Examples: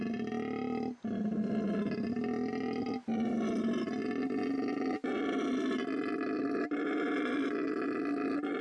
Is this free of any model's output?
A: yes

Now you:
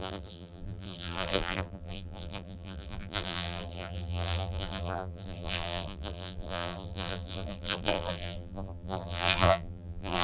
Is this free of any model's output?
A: no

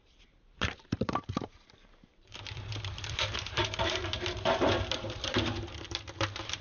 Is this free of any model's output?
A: no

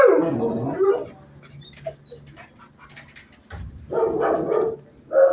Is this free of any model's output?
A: yes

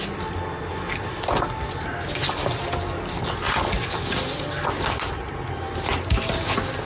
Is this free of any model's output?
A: yes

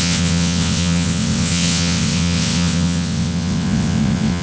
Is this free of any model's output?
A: no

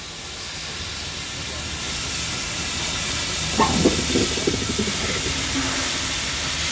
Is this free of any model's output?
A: yes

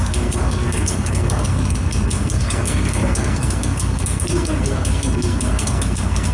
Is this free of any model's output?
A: no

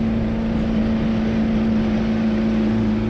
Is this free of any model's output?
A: yes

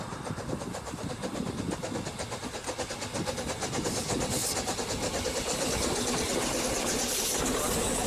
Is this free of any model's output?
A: yes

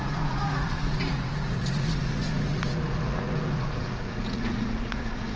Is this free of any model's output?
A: no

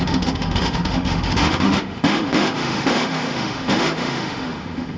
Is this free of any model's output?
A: no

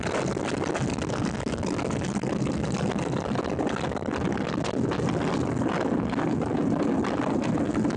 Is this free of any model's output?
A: yes